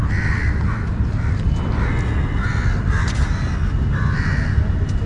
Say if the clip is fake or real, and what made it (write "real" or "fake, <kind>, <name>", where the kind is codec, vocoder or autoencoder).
real